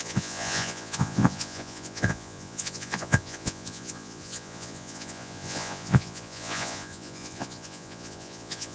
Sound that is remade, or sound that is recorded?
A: remade